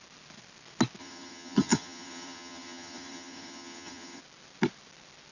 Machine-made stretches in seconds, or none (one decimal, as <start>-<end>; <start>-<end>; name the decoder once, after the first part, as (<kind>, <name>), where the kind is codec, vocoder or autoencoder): 1.0-4.2 (vocoder, HiFi-GAN)

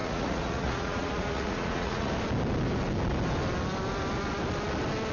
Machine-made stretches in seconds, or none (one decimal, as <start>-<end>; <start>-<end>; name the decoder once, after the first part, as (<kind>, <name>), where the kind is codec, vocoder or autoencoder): 0.0-2.1 (vocoder, Vocos)